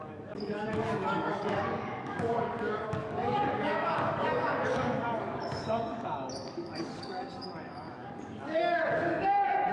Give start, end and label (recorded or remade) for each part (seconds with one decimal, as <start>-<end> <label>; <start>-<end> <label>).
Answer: 0.0-9.7 remade